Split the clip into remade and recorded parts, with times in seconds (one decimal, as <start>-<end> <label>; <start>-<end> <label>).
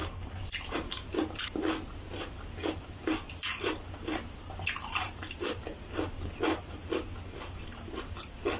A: 0.0-8.6 recorded